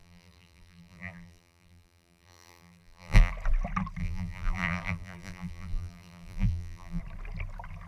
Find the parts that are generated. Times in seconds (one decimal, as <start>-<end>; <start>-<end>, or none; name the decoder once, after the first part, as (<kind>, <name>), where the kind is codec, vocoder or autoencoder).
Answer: 0.0-3.3 (vocoder, BigVGAN v2); 4.0-7.0